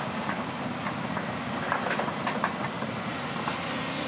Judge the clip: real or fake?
real